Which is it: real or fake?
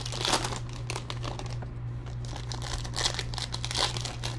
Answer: real